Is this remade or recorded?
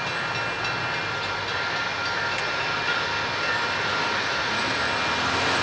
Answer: recorded